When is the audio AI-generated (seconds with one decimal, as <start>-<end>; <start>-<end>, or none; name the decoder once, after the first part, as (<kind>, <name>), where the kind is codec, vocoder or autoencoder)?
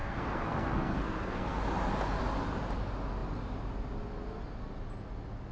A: 0.0-1.6 (codec, SNAC)